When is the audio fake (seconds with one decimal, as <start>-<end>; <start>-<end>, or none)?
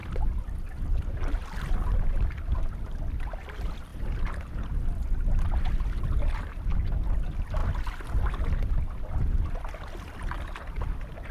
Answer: 0.0-3.9; 5.9-7.6; 9.1-11.3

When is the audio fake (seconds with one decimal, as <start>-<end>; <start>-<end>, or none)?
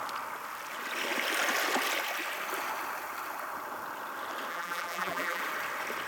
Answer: 4.5-5.4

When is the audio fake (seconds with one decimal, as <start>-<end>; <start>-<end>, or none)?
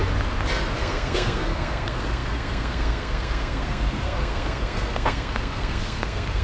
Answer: 0.8-6.4